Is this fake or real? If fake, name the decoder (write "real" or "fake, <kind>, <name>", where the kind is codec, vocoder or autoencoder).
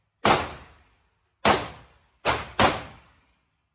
real